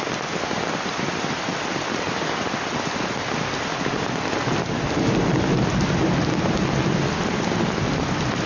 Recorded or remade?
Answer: recorded